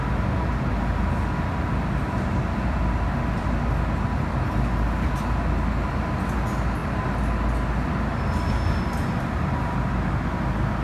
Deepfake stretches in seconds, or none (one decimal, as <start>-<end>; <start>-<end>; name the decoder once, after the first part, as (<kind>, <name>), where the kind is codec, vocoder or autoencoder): none